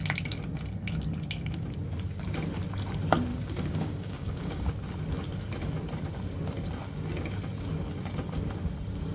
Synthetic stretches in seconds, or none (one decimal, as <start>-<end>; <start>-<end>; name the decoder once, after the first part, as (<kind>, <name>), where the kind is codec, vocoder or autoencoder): 3.3-4.7 (codec, DAC)